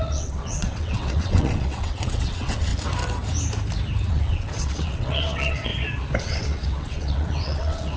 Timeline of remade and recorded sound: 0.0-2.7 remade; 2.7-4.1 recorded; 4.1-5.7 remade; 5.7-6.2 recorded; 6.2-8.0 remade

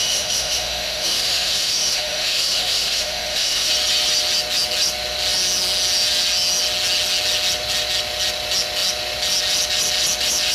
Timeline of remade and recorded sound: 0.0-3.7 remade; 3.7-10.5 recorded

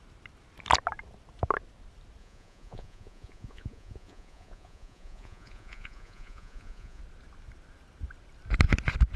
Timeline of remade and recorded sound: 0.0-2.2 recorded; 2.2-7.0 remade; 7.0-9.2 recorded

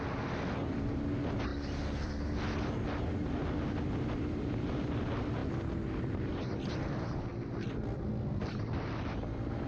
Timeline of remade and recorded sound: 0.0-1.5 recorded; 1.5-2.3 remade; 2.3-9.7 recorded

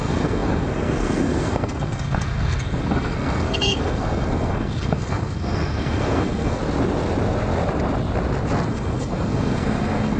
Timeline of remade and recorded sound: 0.0-6.6 remade; 6.6-8.7 recorded; 8.7-10.2 remade

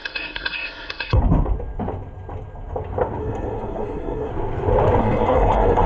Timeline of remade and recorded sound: 0.0-1.2 remade; 1.2-3.2 recorded; 3.2-4.3 remade; 4.3-5.0 recorded; 5.0-5.9 remade